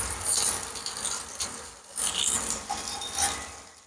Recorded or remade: recorded